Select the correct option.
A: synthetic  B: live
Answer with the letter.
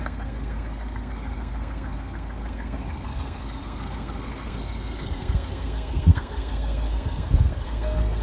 A